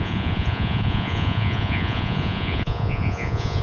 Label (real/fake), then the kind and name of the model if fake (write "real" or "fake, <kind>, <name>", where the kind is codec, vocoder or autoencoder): fake, vocoder, Vocos